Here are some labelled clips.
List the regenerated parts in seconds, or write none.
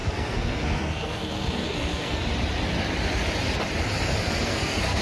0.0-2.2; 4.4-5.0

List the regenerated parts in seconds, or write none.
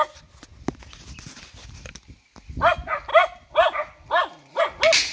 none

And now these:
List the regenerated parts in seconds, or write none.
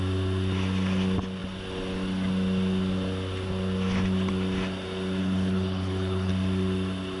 5.2-6.3